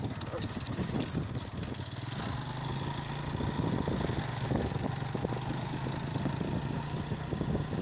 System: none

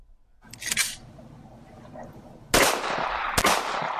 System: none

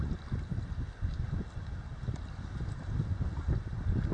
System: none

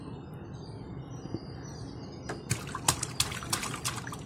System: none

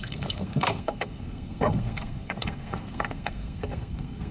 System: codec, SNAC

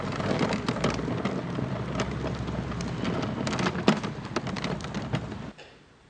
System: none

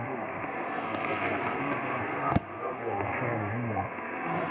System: codec, SNAC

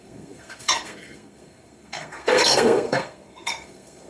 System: codec, SNAC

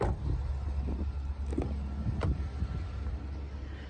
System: none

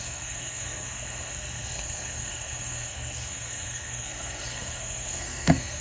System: codec, SNAC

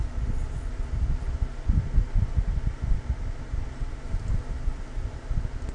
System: none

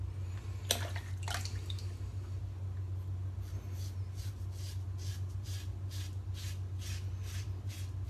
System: none